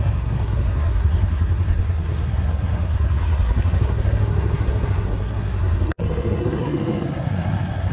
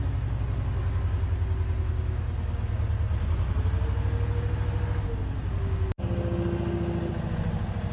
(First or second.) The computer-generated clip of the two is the first